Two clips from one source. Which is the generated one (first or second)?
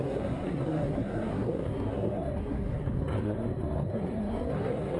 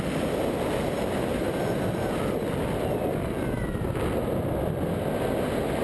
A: first